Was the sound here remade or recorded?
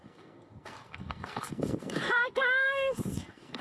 remade